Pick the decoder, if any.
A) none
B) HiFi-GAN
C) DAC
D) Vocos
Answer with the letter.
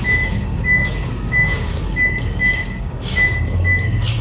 C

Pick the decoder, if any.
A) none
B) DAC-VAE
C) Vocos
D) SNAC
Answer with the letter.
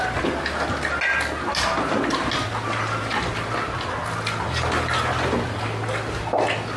A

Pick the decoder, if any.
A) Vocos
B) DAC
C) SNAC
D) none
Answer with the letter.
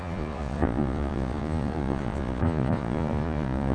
A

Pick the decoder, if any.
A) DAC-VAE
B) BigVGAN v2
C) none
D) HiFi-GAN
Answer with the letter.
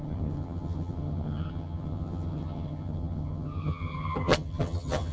D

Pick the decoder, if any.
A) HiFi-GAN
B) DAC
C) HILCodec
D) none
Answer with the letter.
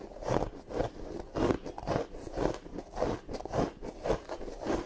D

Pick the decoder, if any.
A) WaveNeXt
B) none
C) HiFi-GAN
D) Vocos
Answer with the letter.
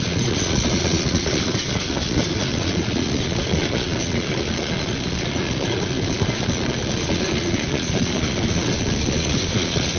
D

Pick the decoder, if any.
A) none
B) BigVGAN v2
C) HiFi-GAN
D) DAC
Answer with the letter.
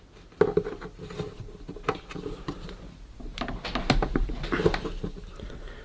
A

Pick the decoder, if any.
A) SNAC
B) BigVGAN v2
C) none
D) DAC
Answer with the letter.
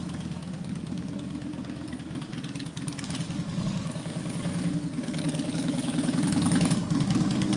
D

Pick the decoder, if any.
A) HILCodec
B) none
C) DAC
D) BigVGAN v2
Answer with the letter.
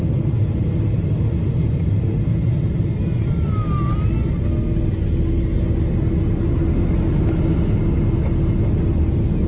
B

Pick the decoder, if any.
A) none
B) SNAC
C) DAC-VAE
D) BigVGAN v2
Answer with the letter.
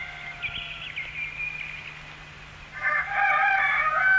A